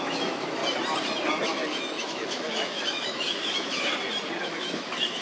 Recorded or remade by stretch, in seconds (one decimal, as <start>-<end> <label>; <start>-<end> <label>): 0.0-0.6 remade; 0.6-1.3 recorded; 1.3-3.9 remade; 3.9-4.4 recorded; 4.4-5.2 remade